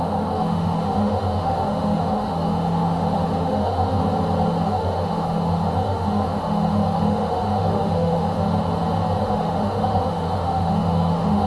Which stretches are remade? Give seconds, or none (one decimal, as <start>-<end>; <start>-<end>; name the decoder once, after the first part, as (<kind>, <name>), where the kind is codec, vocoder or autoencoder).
0.0-4.0 (autoencoder, DAC-VAE); 4.6-8.5; 9.2-11.5